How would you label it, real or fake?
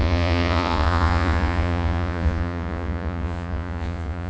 fake